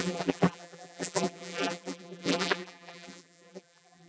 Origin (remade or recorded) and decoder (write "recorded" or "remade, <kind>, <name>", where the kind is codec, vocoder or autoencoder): remade, vocoder, BigVGAN v2